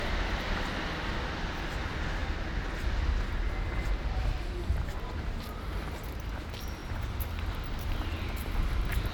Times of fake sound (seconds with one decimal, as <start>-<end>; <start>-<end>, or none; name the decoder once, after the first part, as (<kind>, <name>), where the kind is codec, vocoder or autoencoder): 6.8-9.1 (vocoder, BigVGAN v2)